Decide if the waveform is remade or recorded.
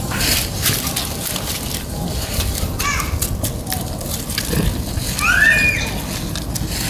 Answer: recorded